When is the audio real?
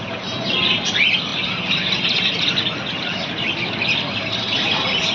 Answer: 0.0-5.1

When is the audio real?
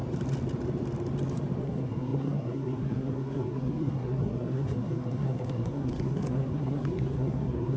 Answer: 0.0-1.6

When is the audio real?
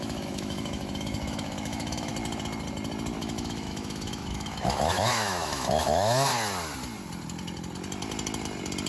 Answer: 2.1-3.2; 6.3-8.9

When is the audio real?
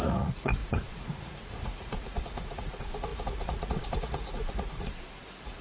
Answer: none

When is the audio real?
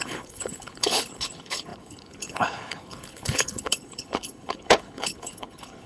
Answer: none